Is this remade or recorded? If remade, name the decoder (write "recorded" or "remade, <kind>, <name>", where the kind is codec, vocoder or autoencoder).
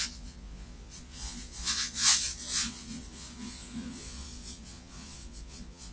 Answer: remade, vocoder, Vocos